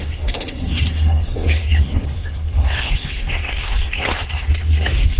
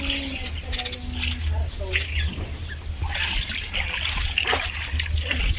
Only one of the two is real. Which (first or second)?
second